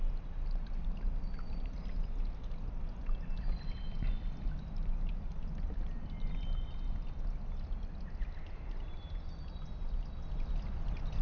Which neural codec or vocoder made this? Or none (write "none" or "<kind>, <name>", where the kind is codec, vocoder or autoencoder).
none